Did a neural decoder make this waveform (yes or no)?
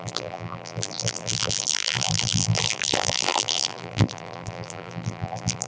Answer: yes